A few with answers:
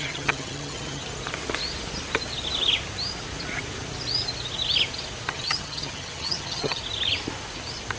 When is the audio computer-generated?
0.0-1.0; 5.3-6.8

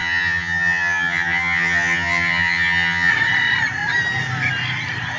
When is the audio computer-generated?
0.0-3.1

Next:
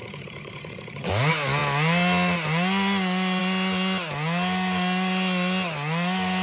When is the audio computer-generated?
0.0-1.1